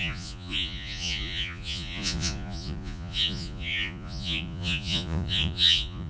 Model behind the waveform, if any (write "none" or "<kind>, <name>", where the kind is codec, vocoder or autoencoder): vocoder, Vocos